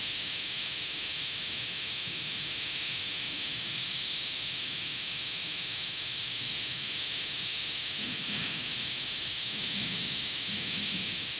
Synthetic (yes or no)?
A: yes